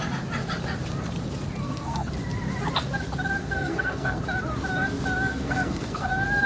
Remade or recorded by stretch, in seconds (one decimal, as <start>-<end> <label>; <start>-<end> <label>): 0.0-1.6 recorded; 1.6-2.1 remade; 2.1-3.4 recorded; 3.4-4.2 remade; 4.2-5.3 recorded; 5.3-6.1 remade; 6.1-6.5 recorded